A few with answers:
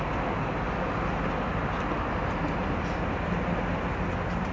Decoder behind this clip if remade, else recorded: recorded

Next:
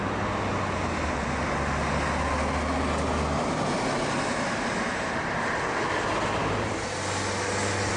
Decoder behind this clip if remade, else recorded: recorded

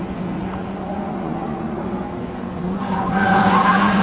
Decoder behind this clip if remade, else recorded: remade, vocoder, Vocos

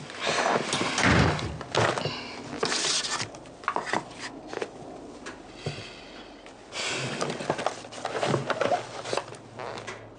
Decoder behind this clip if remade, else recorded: recorded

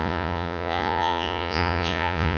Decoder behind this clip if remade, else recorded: remade, vocoder, Vocos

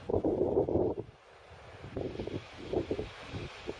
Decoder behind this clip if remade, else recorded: recorded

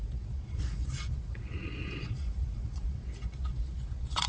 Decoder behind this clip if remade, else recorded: remade, vocoder, Vocos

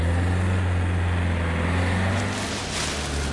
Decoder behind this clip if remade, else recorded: recorded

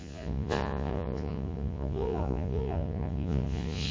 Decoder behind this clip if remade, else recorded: remade, vocoder, Vocos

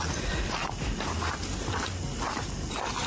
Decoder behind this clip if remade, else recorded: recorded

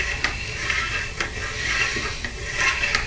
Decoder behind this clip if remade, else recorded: recorded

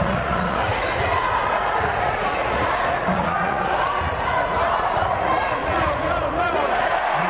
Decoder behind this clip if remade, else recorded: remade, vocoder, Vocos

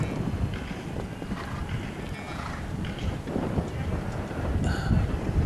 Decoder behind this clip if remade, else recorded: recorded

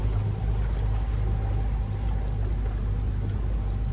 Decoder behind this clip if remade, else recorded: recorded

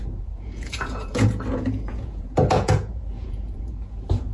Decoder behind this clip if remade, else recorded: remade, vocoder, Vocos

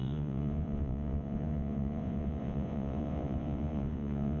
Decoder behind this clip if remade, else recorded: remade, vocoder, Vocos